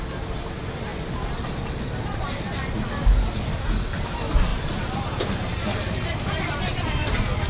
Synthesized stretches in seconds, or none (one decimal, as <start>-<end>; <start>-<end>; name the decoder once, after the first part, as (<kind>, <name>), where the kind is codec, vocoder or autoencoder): 4.5-7.1 (vocoder, BigVGAN v2)